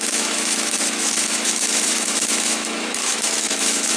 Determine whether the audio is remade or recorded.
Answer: remade